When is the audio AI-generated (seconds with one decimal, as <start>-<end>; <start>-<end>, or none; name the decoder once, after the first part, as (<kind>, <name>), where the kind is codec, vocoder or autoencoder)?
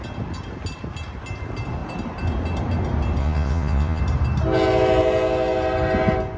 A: 3.2-4.0 (vocoder, Vocos)